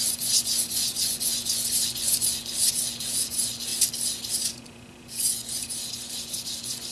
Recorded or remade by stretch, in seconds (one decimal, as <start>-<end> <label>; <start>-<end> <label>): 0.0-3.7 remade; 3.7-4.3 recorded; 4.3-6.9 remade